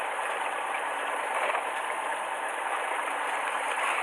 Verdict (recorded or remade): recorded